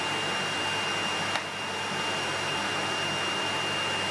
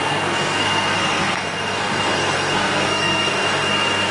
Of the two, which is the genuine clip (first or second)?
first